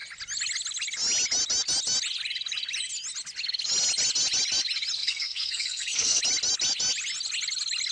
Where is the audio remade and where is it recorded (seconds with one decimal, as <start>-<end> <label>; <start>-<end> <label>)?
0.0-5.0 recorded; 5.0-6.2 remade; 6.2-7.9 recorded

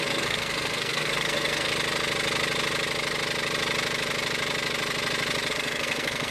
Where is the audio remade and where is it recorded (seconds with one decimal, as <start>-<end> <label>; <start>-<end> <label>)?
0.0-1.7 remade; 1.7-5.5 recorded; 5.5-6.3 remade

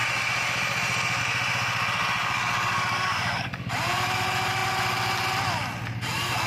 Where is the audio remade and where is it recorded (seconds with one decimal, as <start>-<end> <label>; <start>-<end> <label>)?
0.0-2.2 recorded; 2.2-3.7 remade; 3.7-6.5 recorded

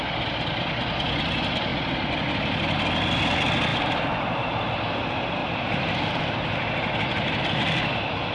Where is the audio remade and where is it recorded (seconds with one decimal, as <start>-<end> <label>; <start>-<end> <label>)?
0.0-3.7 recorded; 3.7-4.7 remade; 4.7-5.4 recorded; 5.4-6.2 remade; 6.2-8.3 recorded

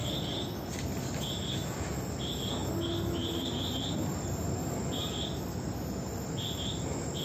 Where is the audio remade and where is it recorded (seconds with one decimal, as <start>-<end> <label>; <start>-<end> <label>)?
0.0-7.2 recorded

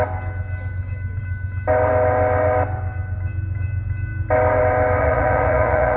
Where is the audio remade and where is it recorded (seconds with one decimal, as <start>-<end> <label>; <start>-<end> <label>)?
0.0-5.0 recorded; 5.0-6.0 remade

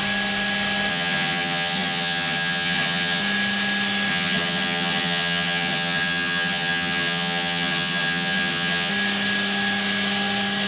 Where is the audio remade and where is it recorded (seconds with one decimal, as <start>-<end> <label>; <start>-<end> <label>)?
0.0-0.9 recorded; 0.9-3.2 remade; 3.2-4.1 recorded; 4.1-8.9 remade; 8.9-10.7 recorded

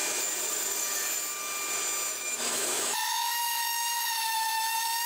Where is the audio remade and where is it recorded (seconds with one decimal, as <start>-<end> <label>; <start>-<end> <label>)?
0.0-2.1 recorded; 2.1-5.1 remade